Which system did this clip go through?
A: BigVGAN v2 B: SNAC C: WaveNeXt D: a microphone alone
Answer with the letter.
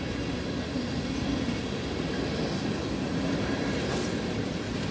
D